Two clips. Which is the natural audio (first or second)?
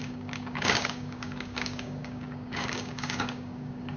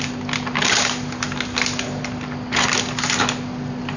second